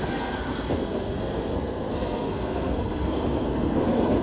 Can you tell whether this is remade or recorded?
remade